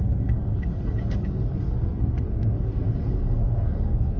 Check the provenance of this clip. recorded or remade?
remade